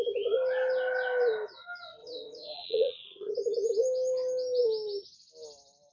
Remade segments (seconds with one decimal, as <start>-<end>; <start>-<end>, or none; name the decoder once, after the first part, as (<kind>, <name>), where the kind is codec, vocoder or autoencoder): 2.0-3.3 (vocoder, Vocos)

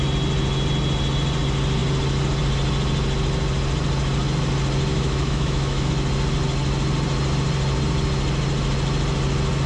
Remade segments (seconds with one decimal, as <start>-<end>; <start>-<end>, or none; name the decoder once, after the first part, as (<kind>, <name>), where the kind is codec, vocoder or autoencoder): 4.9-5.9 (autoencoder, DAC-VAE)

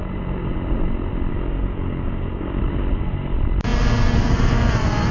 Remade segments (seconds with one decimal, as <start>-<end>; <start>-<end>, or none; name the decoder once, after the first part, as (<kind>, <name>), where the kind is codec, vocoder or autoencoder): 1.3-2.6 (codec, DAC)

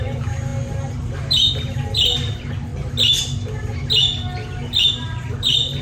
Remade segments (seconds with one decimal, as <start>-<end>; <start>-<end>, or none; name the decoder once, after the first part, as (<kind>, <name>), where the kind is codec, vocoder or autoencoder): 0.0-2.7 (vocoder, BigVGAN v2); 4.9-5.8